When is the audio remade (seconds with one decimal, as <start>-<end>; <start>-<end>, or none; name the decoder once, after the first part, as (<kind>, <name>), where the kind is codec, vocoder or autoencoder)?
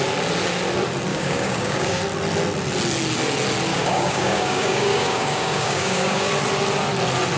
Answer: 1.1-2.0 (codec, DAC); 3.7-6.3